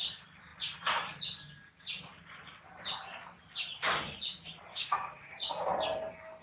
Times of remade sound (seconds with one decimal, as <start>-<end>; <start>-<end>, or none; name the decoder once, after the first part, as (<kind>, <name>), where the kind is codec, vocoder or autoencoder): 4.7-5.5 (codec, DAC)